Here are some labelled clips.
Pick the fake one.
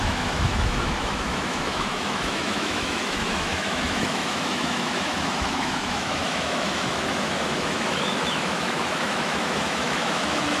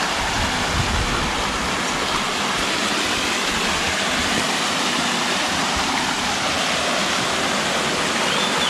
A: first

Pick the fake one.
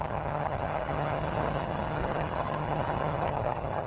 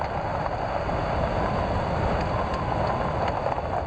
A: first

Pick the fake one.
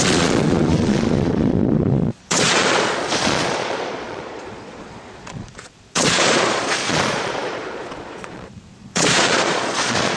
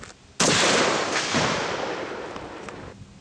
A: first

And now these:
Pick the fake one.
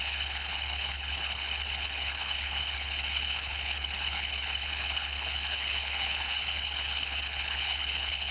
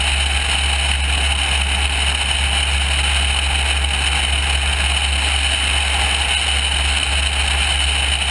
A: first